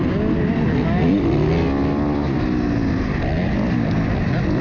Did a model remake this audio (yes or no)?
no